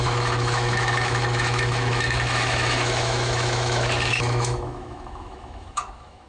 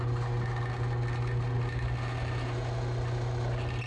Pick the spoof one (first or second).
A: first